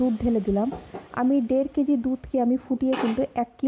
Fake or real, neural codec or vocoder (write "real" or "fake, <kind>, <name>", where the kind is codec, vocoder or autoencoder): real